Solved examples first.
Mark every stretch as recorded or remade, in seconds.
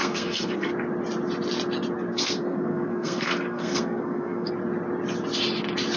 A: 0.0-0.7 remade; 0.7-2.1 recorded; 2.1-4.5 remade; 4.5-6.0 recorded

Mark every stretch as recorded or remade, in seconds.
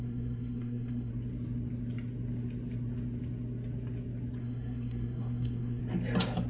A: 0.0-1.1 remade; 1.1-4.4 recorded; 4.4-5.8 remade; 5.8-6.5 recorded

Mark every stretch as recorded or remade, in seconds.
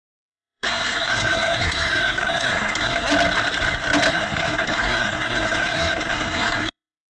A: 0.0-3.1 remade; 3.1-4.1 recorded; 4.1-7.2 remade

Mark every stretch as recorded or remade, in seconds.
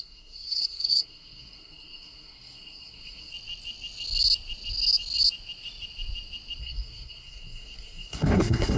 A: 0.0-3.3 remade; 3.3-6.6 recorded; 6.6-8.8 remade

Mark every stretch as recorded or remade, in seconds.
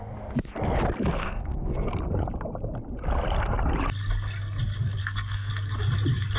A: 0.0-1.2 recorded; 1.2-1.9 remade; 1.9-5.0 recorded; 5.0-5.5 remade; 5.5-6.4 recorded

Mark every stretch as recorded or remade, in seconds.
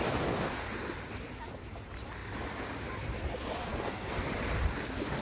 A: 0.0-3.7 recorded; 3.7-4.3 remade; 4.3-5.2 recorded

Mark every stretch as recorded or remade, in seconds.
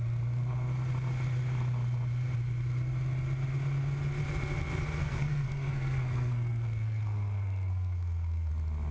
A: 0.0-5.0 recorded; 5.0-8.5 remade; 8.5-8.9 recorded